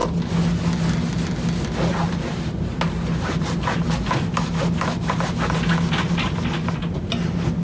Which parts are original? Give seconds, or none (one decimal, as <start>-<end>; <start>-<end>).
0.0-7.6